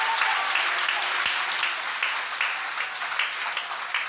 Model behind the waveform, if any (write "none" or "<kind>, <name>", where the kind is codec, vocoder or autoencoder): none